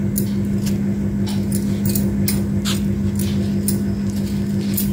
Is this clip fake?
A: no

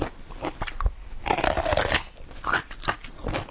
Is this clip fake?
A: no